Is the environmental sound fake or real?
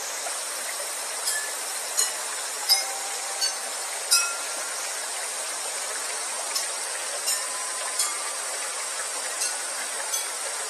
fake